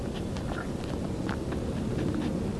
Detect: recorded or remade recorded